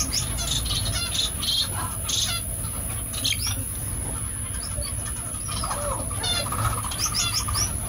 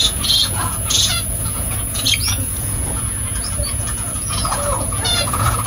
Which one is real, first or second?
first